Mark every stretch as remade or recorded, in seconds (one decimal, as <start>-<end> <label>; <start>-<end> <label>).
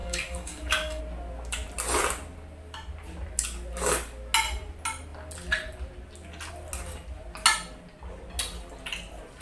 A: 0.0-1.0 remade; 1.0-9.4 recorded